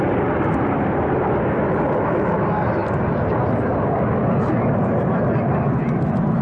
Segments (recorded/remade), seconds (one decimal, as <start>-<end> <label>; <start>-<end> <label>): 0.0-6.4 recorded